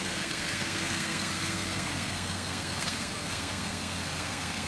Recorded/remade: remade